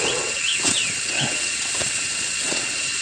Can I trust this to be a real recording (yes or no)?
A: no